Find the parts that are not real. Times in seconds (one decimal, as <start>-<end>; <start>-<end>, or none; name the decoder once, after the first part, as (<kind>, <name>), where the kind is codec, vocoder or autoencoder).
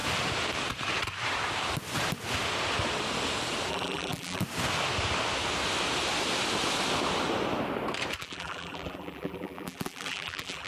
3.7-4.4 (vocoder, BigVGAN v2); 8.2-10.7